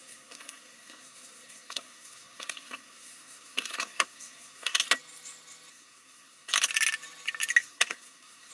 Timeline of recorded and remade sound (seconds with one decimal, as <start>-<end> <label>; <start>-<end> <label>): 0.0-4.8 remade; 4.8-5.7 recorded; 5.7-6.5 remade; 6.5-7.6 recorded; 7.6-8.5 remade